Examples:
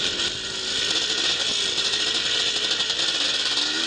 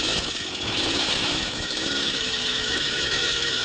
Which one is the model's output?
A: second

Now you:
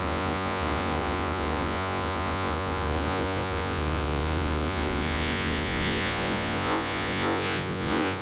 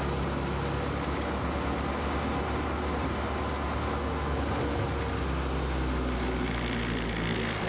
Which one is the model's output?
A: first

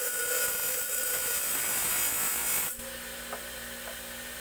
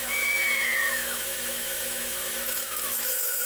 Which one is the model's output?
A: second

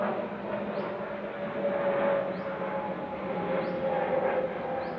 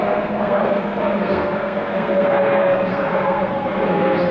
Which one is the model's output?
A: second